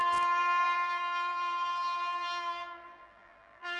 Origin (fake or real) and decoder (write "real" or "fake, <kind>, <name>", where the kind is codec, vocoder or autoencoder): fake, vocoder, BigVGAN v2